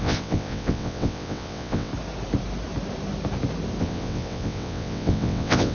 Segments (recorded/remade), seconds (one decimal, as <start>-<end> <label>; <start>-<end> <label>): 0.0-1.9 remade; 1.9-3.8 recorded; 3.8-5.7 remade